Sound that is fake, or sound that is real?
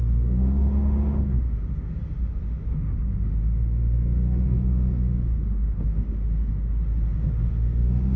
fake